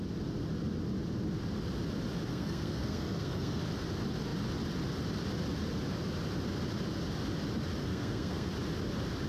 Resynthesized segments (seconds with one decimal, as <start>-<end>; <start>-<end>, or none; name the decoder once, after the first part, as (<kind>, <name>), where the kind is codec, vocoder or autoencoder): 2.3-3.6 (codec, SNAC); 7.8-8.5